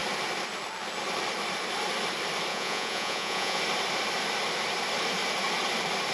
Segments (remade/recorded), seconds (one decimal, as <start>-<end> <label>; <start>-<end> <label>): 0.0-2.5 recorded; 2.5-3.6 remade; 3.6-6.1 recorded

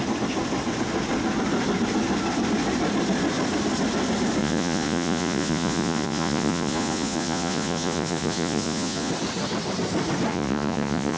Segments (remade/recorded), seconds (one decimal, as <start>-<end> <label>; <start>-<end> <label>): 0.0-4.4 recorded; 4.4-9.1 remade; 9.1-10.3 recorded; 10.3-11.2 remade

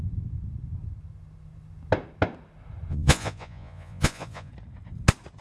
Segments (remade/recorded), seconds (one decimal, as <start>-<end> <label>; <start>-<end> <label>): 0.0-2.9 recorded; 2.9-4.5 remade; 4.5-5.4 recorded